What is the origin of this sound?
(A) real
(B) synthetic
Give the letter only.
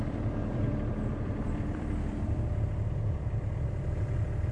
B